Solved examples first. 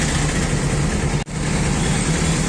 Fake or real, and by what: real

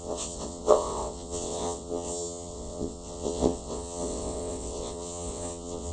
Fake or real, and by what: fake, vocoder, WaveNeXt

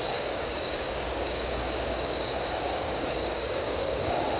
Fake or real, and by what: fake, codec, DAC